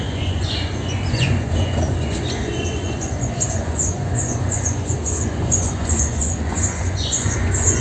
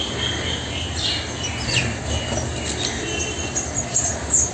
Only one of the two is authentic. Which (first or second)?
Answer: second